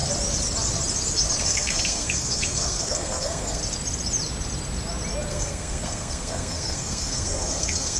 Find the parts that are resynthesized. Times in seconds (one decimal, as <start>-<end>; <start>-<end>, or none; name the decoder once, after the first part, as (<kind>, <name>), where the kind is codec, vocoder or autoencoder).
1.4-3.6 (codec, SNAC); 5.3-8.0